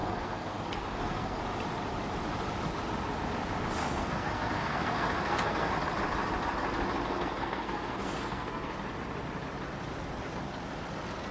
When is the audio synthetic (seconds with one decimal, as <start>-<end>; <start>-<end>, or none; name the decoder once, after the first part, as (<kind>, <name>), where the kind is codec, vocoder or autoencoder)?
0.0-1.4 (codec, SNAC); 3.8-5.7; 7.1-8.7